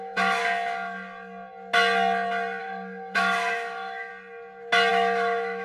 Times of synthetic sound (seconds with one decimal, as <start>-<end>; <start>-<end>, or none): 0.0-0.4; 2.6-4.1; 4.9-5.6